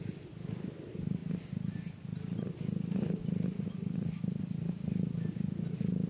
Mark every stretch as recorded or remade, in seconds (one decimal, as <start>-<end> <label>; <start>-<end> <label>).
0.0-6.1 recorded